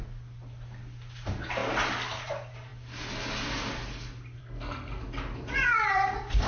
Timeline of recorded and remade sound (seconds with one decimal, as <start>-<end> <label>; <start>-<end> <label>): 0.0-4.4 recorded; 4.4-5.0 remade; 5.0-6.5 recorded